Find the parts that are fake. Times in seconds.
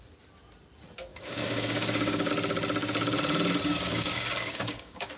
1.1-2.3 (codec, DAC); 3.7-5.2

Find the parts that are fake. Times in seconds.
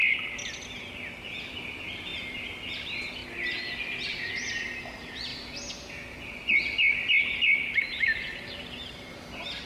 none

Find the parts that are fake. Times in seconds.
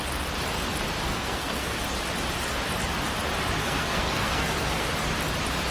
1.1-1.8 (codec, SNAC); 3.6-4.9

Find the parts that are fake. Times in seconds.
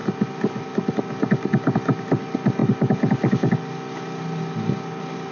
none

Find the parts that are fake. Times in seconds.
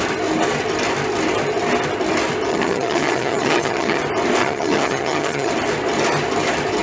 2.5-4.0 (vocoder, HiFi-GAN); 4.4-5.5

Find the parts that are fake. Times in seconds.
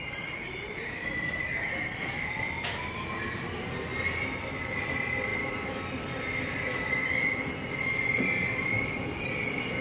0.0-3.9 (vocoder, BigVGAN v2); 4.6-9.8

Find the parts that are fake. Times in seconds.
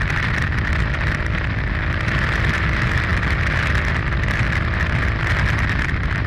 none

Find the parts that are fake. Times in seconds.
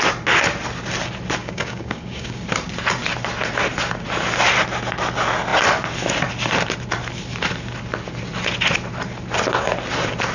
1.4-2.4 (codec, DAC)